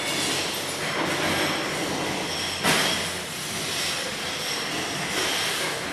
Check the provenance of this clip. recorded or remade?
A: recorded